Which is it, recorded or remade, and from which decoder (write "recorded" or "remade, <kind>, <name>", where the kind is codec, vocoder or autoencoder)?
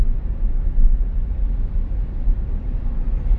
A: recorded